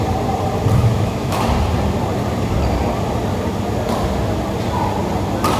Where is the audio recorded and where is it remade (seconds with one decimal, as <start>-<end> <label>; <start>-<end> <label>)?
0.0-0.8 recorded; 0.8-1.4 remade; 1.4-5.6 recorded